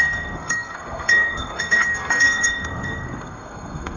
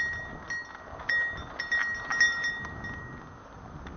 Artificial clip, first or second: first